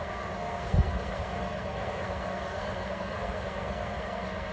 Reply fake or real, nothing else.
fake